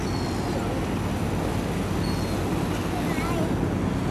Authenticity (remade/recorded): recorded